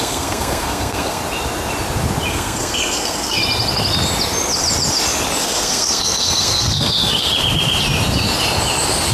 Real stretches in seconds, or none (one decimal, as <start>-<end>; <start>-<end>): 1.2-2.3; 3.4-5.4; 7.3-9.1